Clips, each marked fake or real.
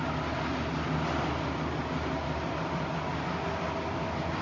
real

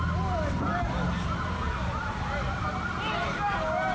real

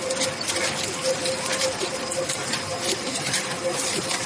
real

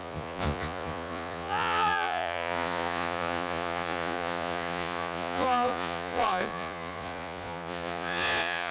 fake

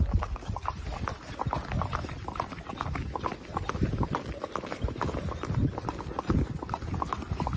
real